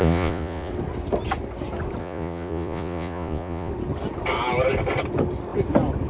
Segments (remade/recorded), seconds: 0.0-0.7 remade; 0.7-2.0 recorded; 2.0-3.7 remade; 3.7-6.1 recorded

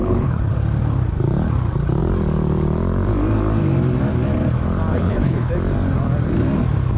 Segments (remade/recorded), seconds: 0.0-0.5 remade; 0.5-4.9 recorded; 4.9-5.5 remade; 5.5-7.0 recorded

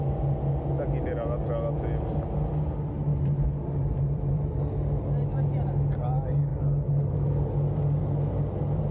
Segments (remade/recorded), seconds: 0.0-3.1 recorded; 3.1-4.6 remade; 4.6-8.9 recorded

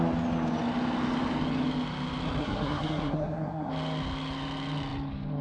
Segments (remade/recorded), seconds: 0.0-2.4 recorded; 2.4-3.7 remade; 3.7-5.4 recorded

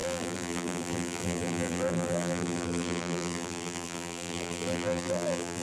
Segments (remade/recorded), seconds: 0.0-5.6 remade

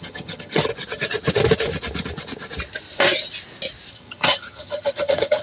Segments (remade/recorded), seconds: 0.0-0.7 remade; 0.7-3.9 recorded; 3.9-5.4 remade